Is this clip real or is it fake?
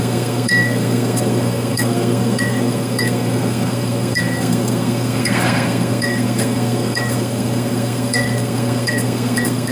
fake